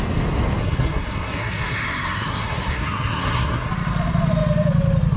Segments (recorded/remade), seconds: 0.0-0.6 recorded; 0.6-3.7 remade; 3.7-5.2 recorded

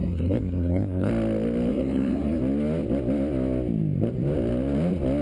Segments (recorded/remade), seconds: 0.0-1.1 remade; 1.1-1.7 recorded; 1.7-2.4 remade; 2.4-5.2 recorded